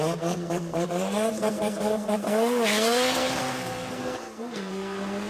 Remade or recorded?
remade